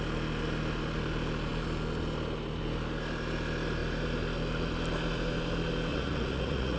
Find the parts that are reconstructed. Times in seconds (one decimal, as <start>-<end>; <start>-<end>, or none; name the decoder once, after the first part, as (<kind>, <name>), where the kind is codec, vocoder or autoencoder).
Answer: 5.9-6.8 (vocoder, Vocos)